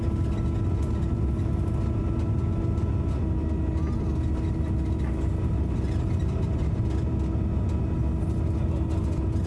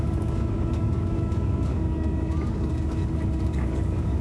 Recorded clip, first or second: first